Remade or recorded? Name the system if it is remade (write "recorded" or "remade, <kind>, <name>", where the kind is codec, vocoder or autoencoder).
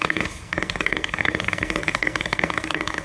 remade, codec, SNAC